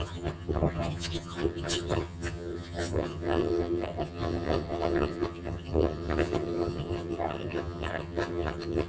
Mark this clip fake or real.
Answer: fake